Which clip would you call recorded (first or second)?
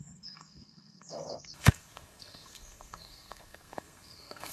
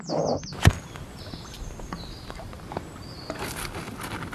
second